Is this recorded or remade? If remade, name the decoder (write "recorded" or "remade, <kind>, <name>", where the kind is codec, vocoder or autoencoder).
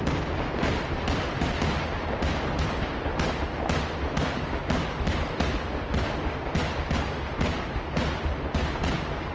recorded